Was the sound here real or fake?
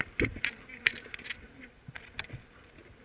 real